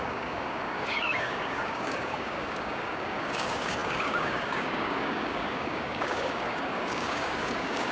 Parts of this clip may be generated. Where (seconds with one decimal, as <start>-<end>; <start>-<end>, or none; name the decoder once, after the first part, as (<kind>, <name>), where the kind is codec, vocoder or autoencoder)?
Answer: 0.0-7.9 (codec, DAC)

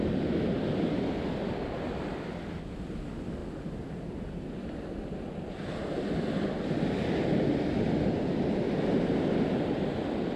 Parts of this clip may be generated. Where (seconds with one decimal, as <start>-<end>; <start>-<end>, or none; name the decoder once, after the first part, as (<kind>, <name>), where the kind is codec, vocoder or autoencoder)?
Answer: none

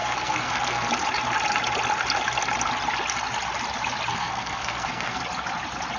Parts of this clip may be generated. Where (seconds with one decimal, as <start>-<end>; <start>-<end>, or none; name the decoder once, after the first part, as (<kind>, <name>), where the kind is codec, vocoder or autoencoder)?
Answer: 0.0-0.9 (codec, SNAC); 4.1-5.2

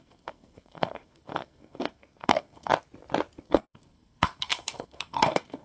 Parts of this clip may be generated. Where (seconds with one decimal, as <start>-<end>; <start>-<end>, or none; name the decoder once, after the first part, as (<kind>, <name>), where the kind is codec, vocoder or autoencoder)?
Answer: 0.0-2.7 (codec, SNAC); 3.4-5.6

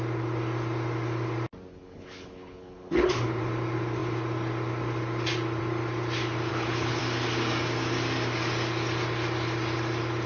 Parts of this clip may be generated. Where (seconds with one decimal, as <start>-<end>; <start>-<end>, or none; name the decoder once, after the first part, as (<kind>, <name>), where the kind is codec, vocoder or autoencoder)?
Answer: 1.7-3.4 (codec, HILCodec); 6.5-7.0

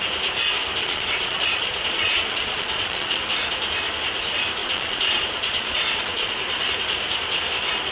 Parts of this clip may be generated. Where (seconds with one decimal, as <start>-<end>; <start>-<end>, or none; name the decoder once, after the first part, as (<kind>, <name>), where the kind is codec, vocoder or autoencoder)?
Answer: 0.8-3.2 (vocoder, Vocos); 4.6-6.6

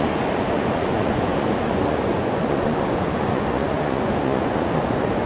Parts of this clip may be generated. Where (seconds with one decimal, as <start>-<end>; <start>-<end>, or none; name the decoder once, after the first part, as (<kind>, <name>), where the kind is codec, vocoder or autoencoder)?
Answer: 0.0-5.3 (vocoder, Vocos)